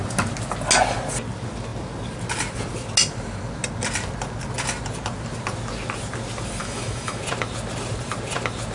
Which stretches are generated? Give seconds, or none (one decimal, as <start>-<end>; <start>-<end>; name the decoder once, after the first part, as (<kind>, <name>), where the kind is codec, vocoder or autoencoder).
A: 6.6-7.2 (autoencoder, DAC-VAE)